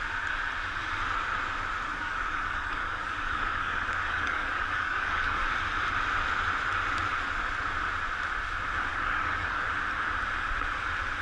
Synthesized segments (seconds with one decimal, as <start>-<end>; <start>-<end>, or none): 1.9-5.5; 8.9-9.7